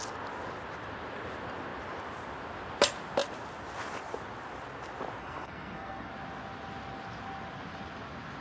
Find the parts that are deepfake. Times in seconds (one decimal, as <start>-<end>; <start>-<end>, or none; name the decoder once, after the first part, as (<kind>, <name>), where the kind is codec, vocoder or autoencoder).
5.2-6.1 (codec, SNAC)

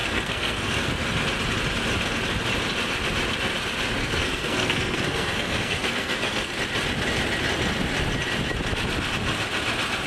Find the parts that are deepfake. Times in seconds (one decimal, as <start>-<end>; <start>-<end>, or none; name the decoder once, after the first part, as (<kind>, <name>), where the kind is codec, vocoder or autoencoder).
0.0-0.9 (codec, SNAC); 4.0-6.5

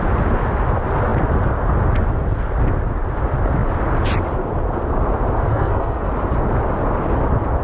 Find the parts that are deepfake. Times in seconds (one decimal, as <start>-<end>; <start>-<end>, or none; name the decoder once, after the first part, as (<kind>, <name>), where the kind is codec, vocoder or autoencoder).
5.5-6.1 (codec, SNAC)

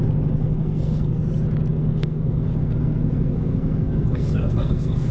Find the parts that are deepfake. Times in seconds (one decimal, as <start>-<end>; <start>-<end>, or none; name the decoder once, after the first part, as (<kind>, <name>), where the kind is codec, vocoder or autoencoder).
0.4-1.2 (codec, SNAC); 1.7-5.1

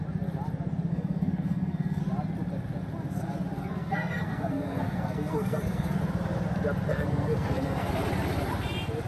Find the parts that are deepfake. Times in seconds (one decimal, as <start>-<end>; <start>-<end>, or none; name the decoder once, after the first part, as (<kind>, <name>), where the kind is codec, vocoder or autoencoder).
0.9-2.0 (codec, SNAC); 3.6-6.0; 6.9-7.9